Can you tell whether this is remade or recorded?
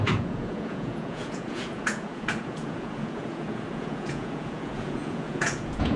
remade